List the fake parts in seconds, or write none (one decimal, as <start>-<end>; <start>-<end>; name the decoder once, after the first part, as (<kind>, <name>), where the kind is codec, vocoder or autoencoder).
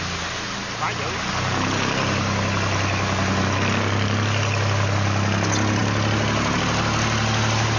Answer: none